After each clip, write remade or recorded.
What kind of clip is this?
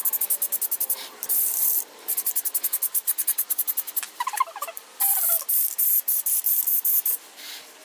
recorded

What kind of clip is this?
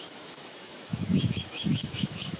remade